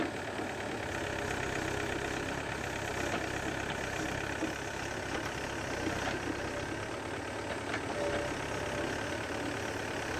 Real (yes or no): yes